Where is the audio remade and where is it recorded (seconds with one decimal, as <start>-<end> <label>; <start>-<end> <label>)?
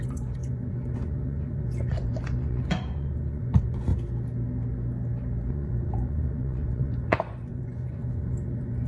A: 0.0-3.9 remade; 3.9-5.5 recorded; 5.5-8.9 remade